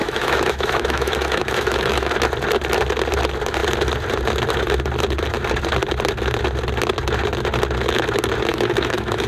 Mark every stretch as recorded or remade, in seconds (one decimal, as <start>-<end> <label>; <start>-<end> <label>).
0.0-2.1 remade; 2.1-8.5 recorded; 8.5-9.3 remade